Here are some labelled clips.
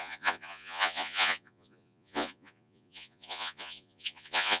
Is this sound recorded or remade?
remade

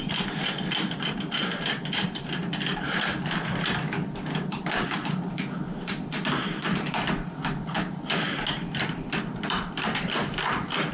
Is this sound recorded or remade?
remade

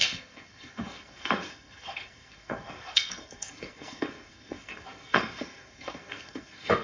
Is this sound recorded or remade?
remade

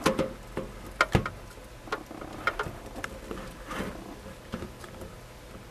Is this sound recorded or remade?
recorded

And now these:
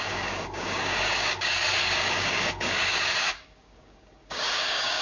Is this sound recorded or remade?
remade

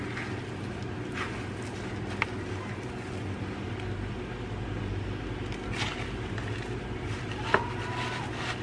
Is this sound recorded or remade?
recorded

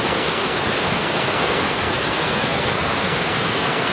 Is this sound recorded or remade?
remade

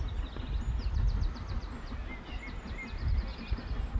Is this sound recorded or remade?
recorded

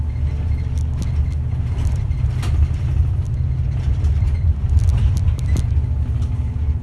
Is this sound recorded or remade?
recorded